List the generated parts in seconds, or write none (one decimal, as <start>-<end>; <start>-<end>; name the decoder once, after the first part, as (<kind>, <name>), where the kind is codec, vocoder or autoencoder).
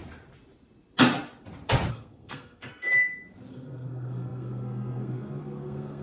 1.9-2.9 (codec, SNAC); 3.5-6.0